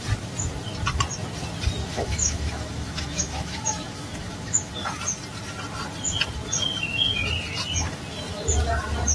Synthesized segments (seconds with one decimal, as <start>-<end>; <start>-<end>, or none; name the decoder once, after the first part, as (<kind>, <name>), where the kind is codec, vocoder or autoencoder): 1.8-4.7 (autoencoder, DAC-VAE)

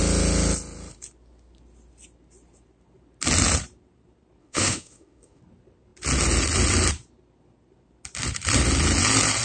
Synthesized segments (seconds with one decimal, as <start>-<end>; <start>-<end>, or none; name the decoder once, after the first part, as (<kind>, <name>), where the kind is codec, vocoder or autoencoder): 4.4-5.4 (autoencoder, DAC-VAE)

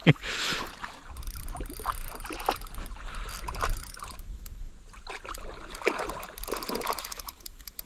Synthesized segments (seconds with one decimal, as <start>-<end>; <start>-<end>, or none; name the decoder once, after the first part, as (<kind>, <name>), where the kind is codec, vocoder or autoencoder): 0.0-0.7 (autoencoder, DAC-VAE); 4.2-4.7; 7.0-7.9